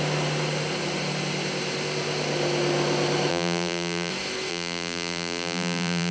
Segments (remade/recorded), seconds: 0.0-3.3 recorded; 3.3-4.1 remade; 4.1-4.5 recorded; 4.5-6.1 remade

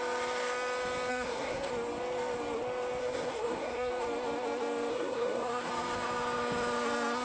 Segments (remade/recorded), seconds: 0.0-1.1 recorded; 1.1-1.7 remade; 1.7-3.0 recorded; 3.0-3.9 remade; 3.9-4.9 recorded; 4.9-5.7 remade; 5.7-7.2 recorded

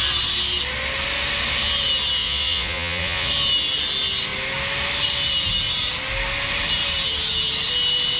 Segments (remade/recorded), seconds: 0.0-2.2 recorded; 2.2-3.3 remade; 3.3-8.2 recorded